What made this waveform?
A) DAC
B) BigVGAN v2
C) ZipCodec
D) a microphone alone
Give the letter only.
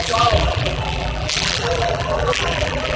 B